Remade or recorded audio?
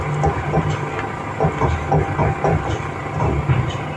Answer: recorded